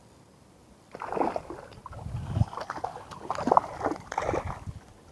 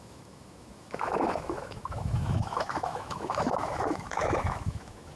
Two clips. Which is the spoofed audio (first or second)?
second